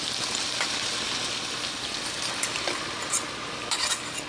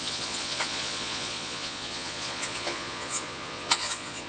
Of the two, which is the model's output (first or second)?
second